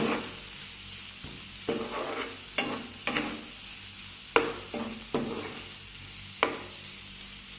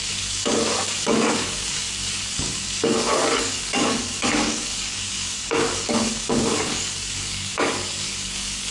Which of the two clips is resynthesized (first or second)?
second